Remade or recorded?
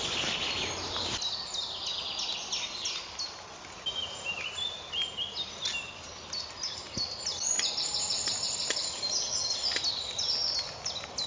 recorded